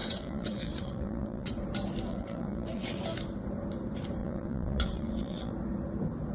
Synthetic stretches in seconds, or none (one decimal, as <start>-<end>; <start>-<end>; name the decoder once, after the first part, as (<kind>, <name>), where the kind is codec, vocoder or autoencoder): 0.0-1.5 (vocoder, WaveNeXt); 2.1-3.0; 4.2-5.5